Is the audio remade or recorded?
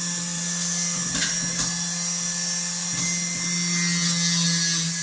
recorded